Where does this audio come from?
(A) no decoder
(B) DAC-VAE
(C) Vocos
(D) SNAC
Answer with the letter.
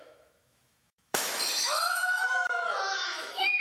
B